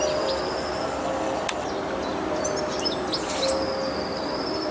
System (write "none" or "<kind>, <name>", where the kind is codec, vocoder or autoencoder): none